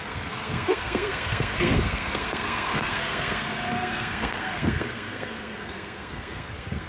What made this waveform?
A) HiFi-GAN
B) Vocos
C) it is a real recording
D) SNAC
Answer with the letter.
D